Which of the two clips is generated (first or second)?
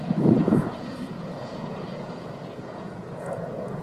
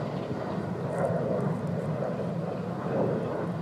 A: first